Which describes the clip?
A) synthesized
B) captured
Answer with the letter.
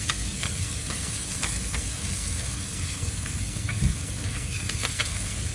A